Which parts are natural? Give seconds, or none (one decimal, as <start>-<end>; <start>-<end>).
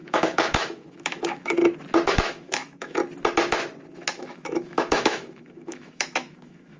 1.6-2.1; 3.0-4.2